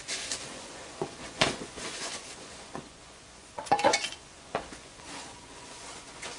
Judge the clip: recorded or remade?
remade